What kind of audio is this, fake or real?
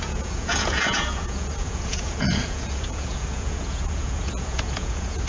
fake